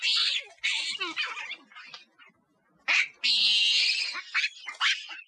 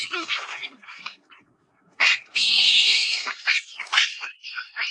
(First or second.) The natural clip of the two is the first